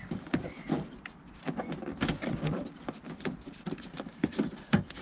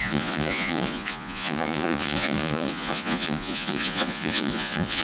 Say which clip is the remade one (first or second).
second